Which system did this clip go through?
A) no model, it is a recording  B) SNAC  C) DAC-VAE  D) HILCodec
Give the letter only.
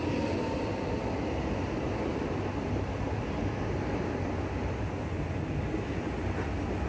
A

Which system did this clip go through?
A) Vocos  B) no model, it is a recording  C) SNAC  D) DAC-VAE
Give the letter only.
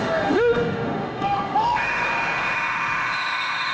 D